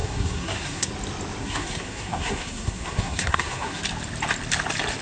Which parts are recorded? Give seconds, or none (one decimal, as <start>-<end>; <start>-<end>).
0.9-1.4; 3.8-5.0